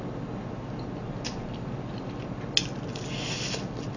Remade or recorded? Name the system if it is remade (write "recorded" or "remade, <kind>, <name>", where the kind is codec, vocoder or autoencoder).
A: recorded